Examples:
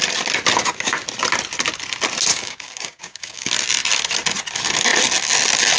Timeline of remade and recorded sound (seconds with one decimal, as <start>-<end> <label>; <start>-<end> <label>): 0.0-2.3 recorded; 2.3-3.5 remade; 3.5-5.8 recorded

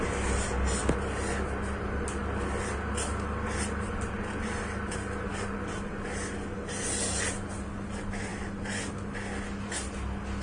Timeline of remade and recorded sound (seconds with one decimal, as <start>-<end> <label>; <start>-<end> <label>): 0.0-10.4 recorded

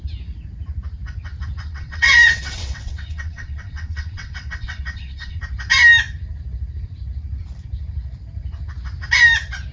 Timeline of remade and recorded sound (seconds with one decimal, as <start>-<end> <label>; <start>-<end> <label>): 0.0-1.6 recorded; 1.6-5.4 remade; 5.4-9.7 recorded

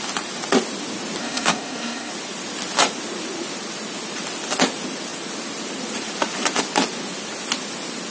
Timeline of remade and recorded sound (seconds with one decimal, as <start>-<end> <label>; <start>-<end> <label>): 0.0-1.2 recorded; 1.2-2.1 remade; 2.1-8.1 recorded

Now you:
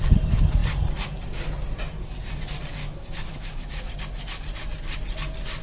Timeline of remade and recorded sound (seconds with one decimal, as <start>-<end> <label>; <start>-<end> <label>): 0.0-2.8 recorded; 2.8-3.9 remade; 3.9-5.6 recorded

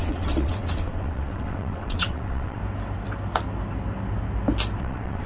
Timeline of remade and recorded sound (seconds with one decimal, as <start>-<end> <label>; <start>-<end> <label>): 0.0-2.6 remade; 2.6-4.8 recorded; 4.8-5.3 remade